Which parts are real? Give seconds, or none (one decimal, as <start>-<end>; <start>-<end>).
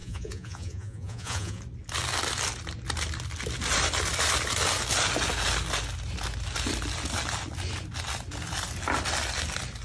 1.6-9.8